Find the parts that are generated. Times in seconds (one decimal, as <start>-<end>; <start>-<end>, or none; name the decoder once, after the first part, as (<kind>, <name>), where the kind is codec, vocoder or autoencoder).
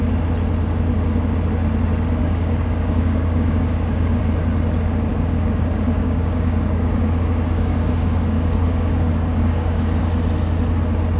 2.2-4.2 (codec, DAC); 5.1-10.0